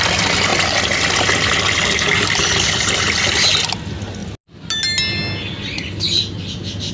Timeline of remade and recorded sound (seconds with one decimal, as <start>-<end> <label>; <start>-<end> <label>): 0.0-6.9 recorded

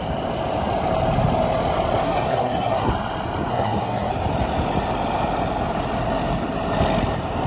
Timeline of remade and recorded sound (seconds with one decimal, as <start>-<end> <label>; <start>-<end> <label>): 0.0-2.0 recorded; 2.0-2.9 remade; 2.9-3.5 recorded; 3.5-4.1 remade; 4.1-7.5 recorded

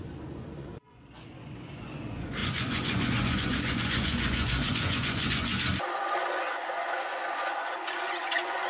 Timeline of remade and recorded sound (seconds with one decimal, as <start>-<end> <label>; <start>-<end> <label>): 0.0-5.5 remade; 5.5-6.0 recorded; 6.0-8.7 remade

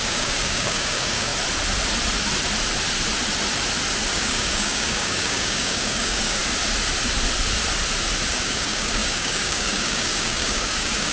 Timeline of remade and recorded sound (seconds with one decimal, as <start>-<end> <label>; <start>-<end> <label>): 0.0-1.3 remade; 1.3-4.1 recorded; 4.1-6.4 remade; 6.4-8.3 recorded; 8.3-11.1 remade

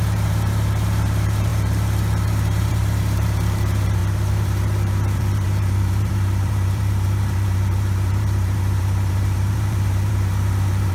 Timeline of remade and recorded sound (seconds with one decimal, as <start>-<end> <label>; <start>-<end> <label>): 0.0-10.9 remade

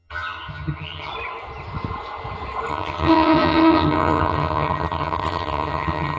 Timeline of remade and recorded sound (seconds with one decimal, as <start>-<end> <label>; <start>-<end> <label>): 0.0-1.1 remade; 1.1-2.7 recorded; 2.7-6.2 remade